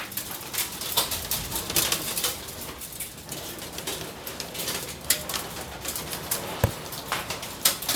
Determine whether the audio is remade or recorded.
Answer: recorded